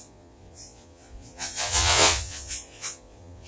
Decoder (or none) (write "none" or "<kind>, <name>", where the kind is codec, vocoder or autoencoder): vocoder, Vocos